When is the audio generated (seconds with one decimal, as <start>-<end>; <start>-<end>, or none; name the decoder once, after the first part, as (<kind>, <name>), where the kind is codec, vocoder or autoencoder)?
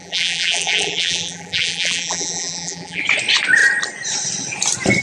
0.0-3.0 (vocoder, BigVGAN v2)